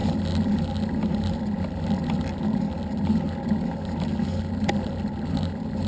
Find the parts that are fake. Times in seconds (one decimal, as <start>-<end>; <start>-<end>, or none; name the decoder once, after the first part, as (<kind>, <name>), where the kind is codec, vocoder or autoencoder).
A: none